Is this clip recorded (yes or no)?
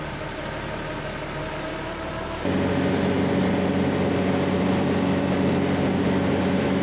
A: yes